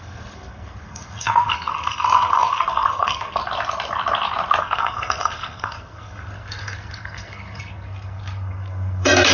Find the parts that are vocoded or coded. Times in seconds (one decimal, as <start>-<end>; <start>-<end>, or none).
0.0-3.4; 4.6-9.3